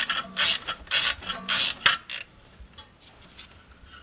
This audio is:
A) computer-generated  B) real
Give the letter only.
B